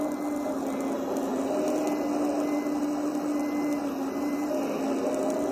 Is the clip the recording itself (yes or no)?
yes